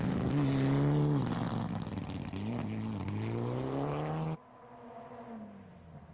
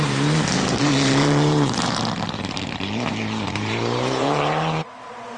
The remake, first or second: second